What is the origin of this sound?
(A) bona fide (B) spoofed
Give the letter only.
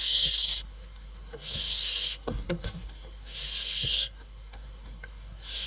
B